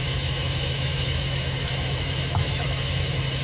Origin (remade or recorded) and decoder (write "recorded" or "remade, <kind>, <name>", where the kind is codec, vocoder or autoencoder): remade, autoencoder, DAC-VAE